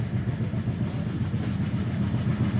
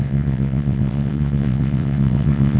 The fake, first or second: second